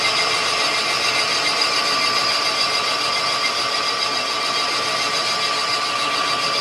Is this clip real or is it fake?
real